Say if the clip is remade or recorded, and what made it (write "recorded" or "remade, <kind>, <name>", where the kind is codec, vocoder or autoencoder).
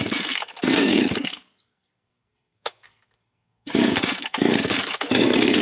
remade, codec, SNAC